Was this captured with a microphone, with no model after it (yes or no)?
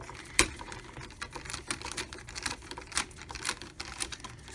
no